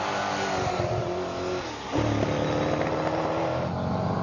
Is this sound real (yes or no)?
yes